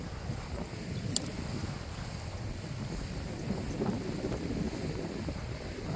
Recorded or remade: recorded